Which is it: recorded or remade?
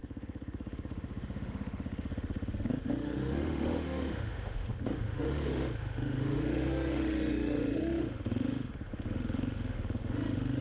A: remade